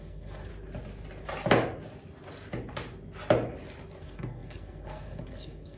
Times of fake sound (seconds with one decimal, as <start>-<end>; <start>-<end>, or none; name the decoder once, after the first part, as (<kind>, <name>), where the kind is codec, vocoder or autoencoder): 0.0-0.5 (codec, SNAC); 4.0-5.8